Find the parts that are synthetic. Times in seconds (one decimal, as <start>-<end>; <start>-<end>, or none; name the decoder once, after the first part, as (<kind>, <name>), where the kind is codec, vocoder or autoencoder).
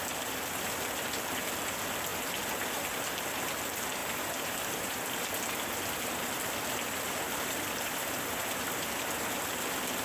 4.0-8.4 (vocoder, BigVGAN v2)